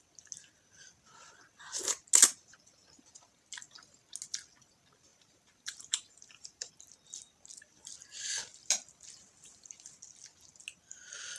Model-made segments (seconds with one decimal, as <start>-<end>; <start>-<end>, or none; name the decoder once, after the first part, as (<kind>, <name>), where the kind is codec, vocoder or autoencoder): 5.1-6.7 (vocoder, BigVGAN v2)